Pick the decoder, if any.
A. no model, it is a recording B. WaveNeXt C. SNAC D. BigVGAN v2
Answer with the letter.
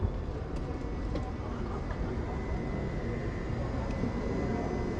A